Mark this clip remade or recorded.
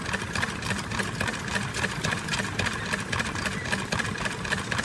recorded